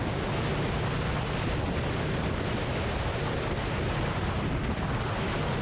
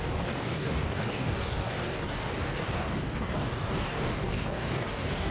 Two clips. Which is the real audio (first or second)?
first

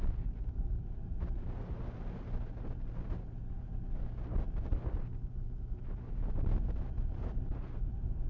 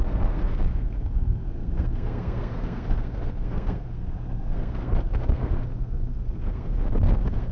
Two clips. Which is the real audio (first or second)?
first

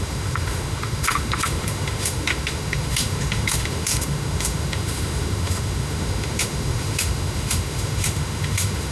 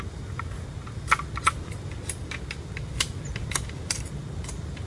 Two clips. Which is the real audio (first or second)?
second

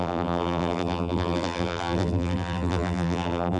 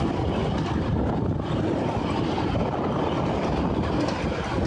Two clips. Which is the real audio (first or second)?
second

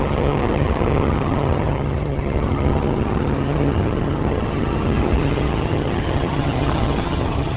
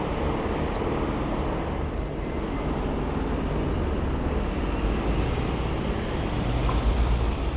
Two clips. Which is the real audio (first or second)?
second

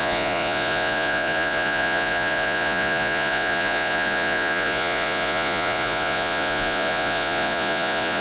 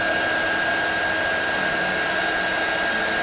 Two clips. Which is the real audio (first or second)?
second